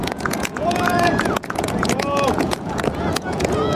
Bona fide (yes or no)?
no